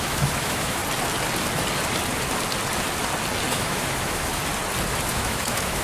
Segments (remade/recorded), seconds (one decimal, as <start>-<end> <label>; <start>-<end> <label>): 0.0-0.8 remade; 0.8-3.5 recorded; 3.5-4.3 remade; 4.3-5.1 recorded; 5.1-5.8 remade